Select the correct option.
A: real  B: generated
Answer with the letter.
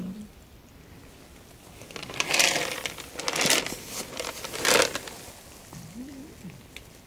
A